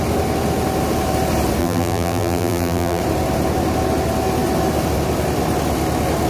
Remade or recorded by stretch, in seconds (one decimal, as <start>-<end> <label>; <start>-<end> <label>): 0.0-1.6 recorded; 1.6-3.0 remade; 3.0-6.3 recorded